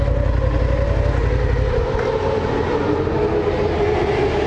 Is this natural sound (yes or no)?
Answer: yes